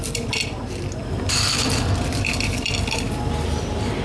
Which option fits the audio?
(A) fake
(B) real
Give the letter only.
A